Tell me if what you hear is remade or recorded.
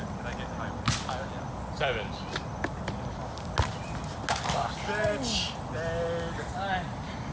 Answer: recorded